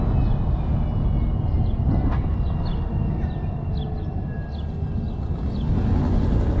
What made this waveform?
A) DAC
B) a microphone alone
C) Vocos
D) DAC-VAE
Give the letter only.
B